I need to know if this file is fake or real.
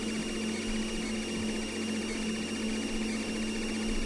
real